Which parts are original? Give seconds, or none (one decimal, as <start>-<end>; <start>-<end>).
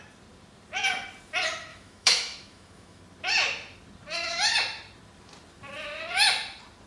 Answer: 0.0-1.7; 3.0-6.9